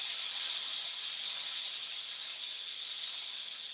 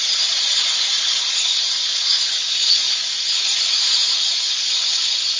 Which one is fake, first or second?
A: second